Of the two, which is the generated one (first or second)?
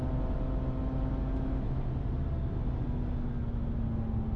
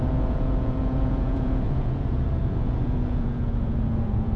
second